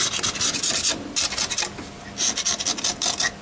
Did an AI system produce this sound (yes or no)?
no